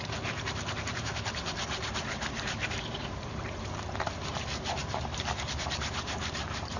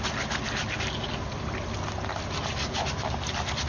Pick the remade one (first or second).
first